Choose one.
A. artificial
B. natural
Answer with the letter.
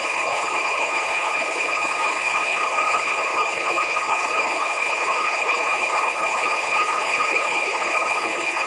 A